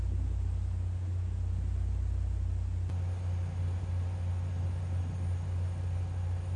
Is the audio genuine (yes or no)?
yes